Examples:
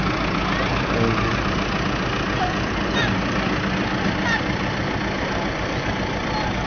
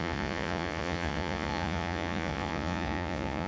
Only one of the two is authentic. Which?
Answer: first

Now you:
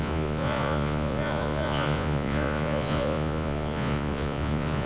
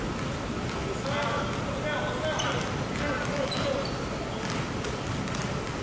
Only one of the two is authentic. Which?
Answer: second